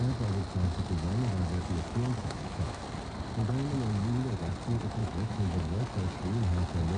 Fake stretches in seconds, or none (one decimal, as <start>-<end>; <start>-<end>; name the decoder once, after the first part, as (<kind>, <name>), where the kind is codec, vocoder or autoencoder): 2.2-2.8 (autoencoder, DAC-VAE); 5.0-5.8